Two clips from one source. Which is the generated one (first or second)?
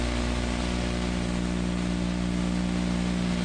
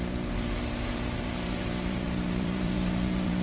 second